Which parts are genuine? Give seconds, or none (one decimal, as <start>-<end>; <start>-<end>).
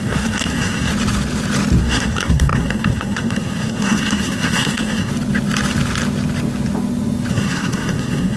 0.9-1.8; 5.1-7.3